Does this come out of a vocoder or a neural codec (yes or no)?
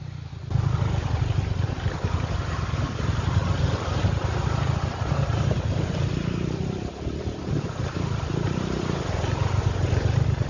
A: no